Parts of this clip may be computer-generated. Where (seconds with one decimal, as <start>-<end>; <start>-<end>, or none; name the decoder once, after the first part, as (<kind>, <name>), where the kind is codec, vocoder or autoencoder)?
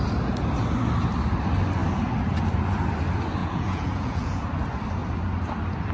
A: 3.4-4.4 (vocoder, Vocos)